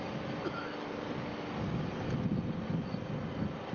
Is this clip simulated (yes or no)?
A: yes